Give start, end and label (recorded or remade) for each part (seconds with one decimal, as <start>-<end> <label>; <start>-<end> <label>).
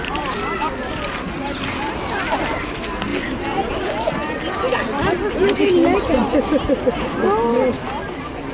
0.0-8.5 recorded